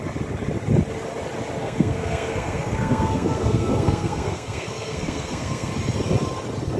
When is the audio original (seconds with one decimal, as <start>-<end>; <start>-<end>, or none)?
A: 0.0-1.6; 5.7-6.8